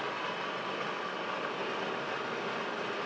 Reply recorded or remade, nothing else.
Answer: recorded